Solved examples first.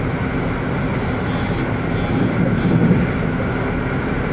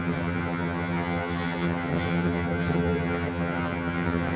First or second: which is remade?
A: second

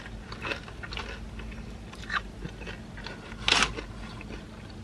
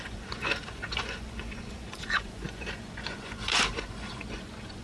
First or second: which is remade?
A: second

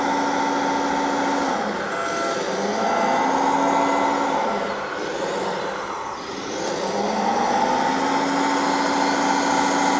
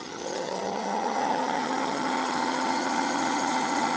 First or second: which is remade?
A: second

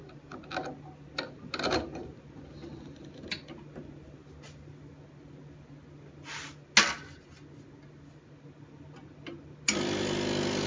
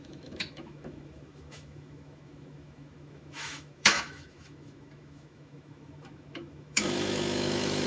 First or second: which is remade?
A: second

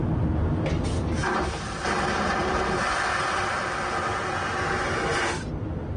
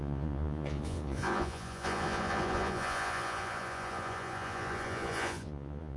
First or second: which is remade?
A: second